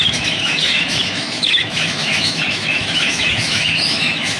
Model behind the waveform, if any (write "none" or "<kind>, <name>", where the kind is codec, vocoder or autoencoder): autoencoder, DAC-VAE